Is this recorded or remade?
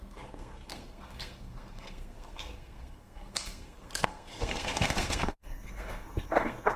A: remade